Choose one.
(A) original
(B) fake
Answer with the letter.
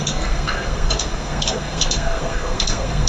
B